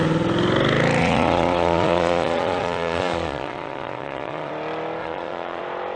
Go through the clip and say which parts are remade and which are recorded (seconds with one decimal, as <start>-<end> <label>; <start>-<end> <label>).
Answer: 0.0-1.0 recorded; 1.0-4.5 remade; 4.5-5.0 recorded; 5.0-5.6 remade; 5.6-6.0 recorded